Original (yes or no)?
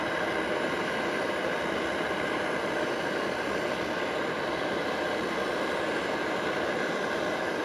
yes